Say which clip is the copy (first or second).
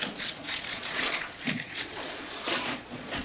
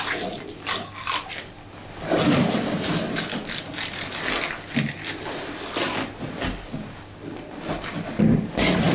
first